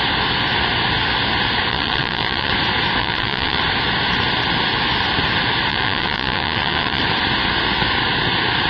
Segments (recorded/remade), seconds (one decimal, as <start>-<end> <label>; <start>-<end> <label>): 0.0-1.7 recorded; 1.7-2.5 remade; 2.5-3.0 recorded; 3.0-3.6 remade; 3.6-5.7 recorded; 5.7-7.0 remade; 7.0-8.7 recorded